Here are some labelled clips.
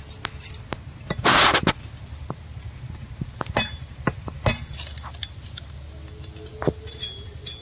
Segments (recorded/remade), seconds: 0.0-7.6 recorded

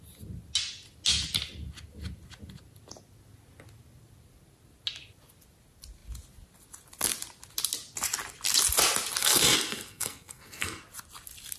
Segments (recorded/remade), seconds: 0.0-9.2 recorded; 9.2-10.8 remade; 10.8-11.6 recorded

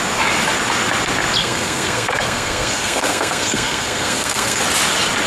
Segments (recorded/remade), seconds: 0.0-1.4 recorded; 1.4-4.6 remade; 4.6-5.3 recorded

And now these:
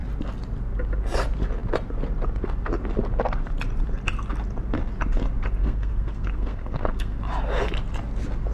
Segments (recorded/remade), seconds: 0.0-5.6 recorded; 5.6-7.2 remade; 7.2-8.5 recorded